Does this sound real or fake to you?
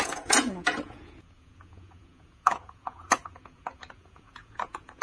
fake